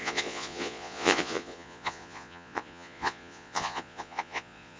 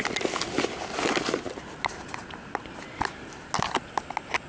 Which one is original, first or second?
second